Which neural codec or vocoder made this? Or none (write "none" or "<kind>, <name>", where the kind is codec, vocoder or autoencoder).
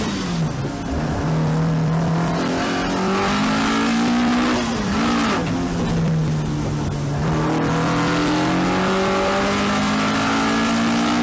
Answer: none